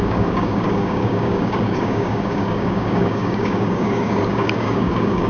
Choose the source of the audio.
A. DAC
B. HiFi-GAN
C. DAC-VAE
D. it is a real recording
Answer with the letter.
A